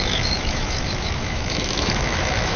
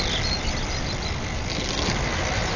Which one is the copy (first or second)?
first